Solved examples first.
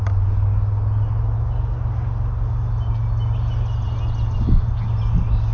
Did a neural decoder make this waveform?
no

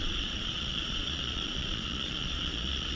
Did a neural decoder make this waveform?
yes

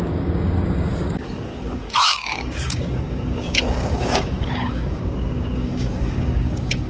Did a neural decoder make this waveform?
yes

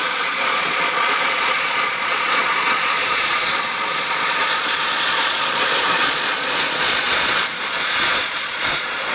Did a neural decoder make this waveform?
yes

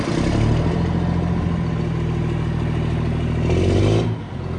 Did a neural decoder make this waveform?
no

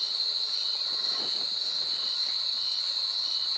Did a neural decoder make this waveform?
no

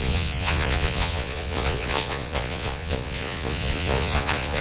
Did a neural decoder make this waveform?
yes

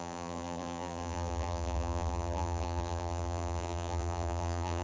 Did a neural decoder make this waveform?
yes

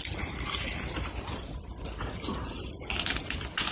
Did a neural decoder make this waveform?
no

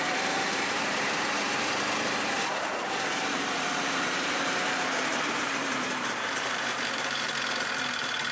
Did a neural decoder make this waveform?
yes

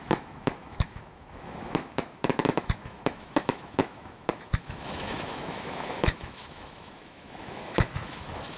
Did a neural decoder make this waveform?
yes